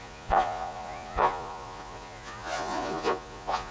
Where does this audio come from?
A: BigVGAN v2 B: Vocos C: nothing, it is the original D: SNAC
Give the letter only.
B